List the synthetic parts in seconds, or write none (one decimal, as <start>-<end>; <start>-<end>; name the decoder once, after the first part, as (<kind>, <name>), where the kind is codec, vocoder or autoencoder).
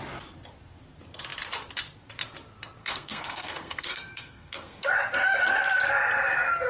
2.8-4.9 (codec, SNAC)